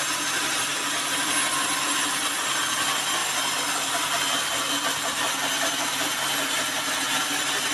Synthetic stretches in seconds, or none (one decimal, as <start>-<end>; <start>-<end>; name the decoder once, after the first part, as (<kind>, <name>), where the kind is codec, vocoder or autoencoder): 3.2-4.7 (vocoder, BigVGAN v2)